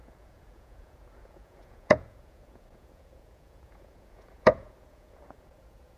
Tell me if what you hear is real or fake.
fake